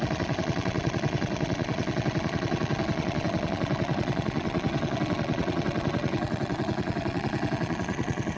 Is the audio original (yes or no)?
no